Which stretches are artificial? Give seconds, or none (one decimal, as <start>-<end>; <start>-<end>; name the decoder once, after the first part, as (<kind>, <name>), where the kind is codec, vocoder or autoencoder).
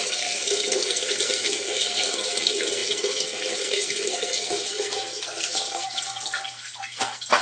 0.0-7.4 (codec, SNAC)